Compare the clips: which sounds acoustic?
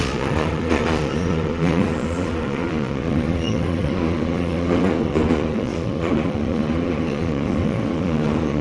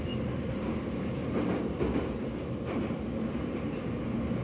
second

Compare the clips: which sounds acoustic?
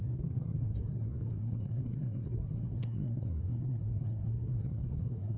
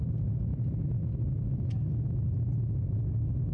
second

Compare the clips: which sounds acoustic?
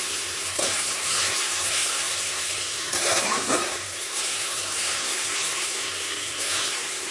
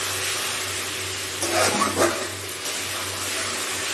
second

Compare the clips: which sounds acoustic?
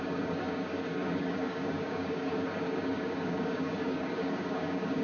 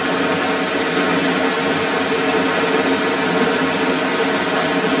second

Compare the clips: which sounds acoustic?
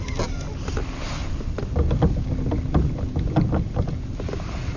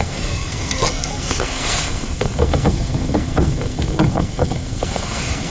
first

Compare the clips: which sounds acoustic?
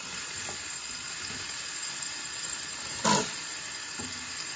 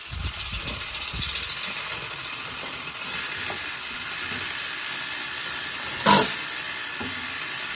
second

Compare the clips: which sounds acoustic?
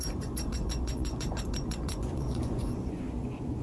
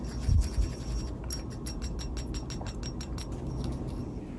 second